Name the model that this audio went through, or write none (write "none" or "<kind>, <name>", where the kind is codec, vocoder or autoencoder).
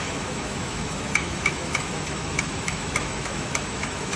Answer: autoencoder, DAC-VAE